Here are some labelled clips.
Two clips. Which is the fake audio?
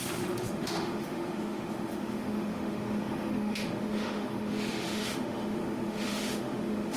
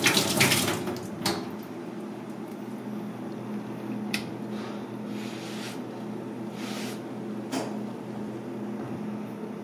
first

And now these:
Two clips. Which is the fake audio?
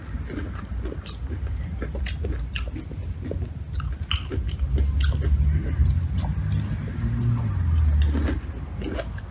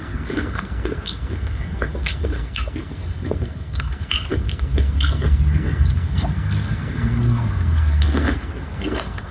second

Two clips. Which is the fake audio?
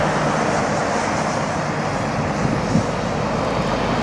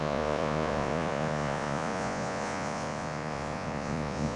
second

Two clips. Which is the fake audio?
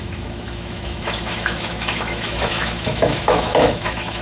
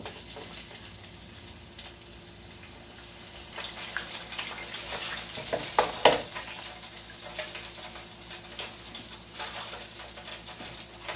first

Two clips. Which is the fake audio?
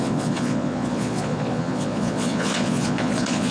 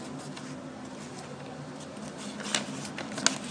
first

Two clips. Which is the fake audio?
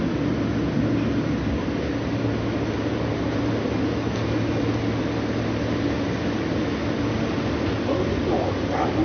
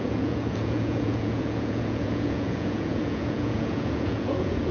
second